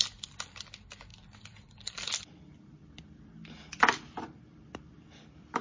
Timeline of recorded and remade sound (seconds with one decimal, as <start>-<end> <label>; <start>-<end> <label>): 0.0-5.6 recorded